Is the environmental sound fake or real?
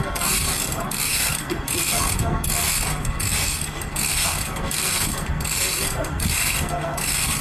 fake